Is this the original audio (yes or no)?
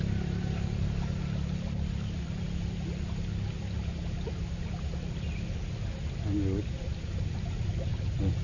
yes